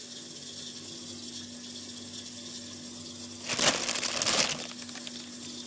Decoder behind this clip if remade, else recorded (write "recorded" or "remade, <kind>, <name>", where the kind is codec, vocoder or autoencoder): recorded